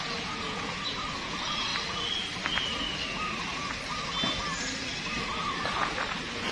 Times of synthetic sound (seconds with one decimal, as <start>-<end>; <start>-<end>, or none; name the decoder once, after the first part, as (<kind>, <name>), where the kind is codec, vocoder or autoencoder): 0.0-1.7 (vocoder, Vocos); 5.5-6.5